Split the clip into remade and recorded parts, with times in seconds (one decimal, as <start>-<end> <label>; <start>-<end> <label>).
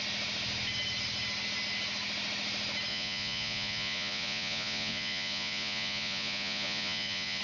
0.0-2.9 recorded; 2.9-7.4 remade